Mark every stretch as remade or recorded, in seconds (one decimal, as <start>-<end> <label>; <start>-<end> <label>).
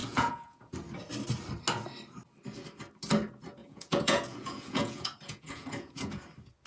0.0-0.7 remade; 0.7-3.6 recorded; 3.6-6.2 remade; 6.2-6.7 recorded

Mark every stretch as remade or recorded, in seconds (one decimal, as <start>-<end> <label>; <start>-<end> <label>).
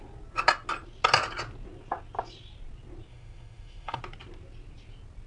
0.0-3.1 recorded; 3.1-4.0 remade; 4.0-5.3 recorded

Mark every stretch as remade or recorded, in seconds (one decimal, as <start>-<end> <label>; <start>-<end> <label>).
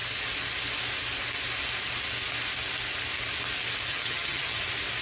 0.0-3.9 recorded; 3.9-4.6 remade; 4.6-5.0 recorded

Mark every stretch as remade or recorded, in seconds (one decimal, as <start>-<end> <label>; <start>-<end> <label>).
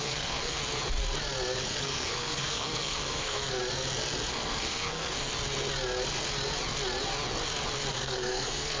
0.0-0.6 remade; 0.6-1.8 recorded; 1.8-3.6 remade; 3.6-4.3 recorded; 4.3-5.3 remade; 5.3-7.9 recorded; 7.9-8.8 remade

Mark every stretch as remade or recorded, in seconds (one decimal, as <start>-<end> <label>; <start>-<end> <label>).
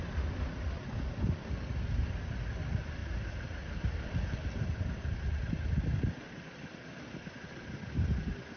0.0-3.0 recorded; 3.0-5.4 remade; 5.4-8.6 recorded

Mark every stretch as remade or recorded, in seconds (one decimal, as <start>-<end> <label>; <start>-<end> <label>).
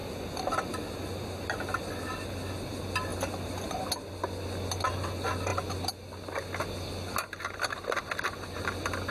0.0-9.1 recorded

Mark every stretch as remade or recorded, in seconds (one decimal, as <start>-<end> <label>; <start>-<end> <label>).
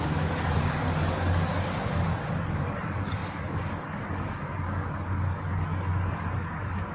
0.0-6.9 remade